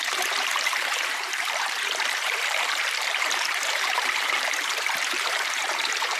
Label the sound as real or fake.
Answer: fake